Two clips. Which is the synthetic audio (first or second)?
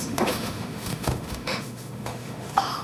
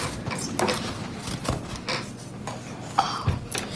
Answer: first